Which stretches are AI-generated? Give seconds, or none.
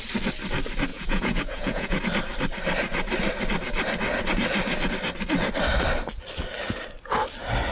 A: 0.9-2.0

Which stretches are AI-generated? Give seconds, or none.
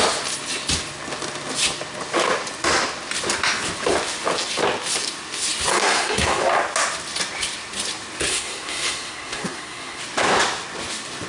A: 5.7-6.4; 8.3-10.0